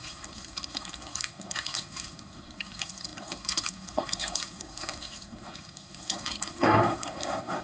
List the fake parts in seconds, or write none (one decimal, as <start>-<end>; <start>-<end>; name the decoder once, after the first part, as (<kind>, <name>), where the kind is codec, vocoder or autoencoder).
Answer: 0.0-7.6 (codec, SNAC)